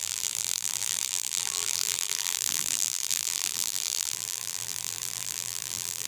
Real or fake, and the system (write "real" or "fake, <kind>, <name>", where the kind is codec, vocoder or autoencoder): fake, vocoder, BigVGAN v2